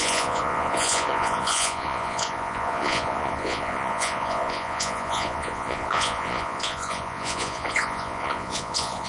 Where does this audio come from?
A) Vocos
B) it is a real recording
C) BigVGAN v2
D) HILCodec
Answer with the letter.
A